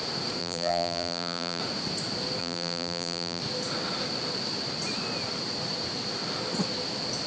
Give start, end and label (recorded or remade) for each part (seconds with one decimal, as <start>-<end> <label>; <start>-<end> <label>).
0.0-0.4 recorded; 0.4-1.6 remade; 1.6-2.4 recorded; 2.4-3.4 remade; 3.4-7.3 recorded